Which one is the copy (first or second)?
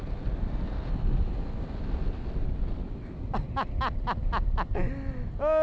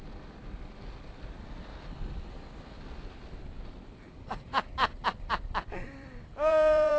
second